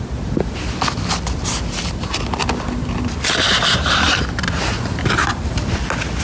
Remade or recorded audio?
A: recorded